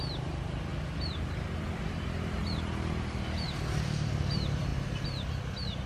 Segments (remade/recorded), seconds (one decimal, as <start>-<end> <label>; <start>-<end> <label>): 0.0-5.9 recorded